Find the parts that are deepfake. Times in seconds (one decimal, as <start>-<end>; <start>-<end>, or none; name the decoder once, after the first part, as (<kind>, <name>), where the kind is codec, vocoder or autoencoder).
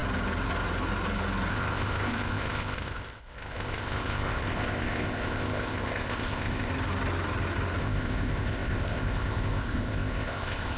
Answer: 1.5-6.7 (codec, ZipCodec); 7.8-10.8